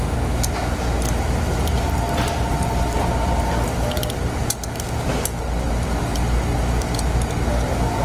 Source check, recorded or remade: recorded